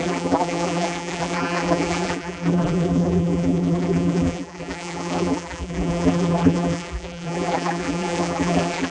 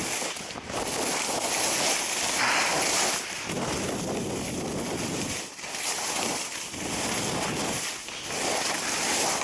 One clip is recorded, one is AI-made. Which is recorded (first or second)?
second